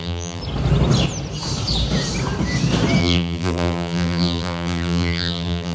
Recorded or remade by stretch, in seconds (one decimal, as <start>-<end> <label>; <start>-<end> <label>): 0.0-0.4 remade; 0.4-3.0 recorded; 3.0-5.7 remade